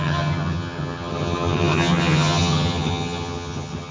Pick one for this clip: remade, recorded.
remade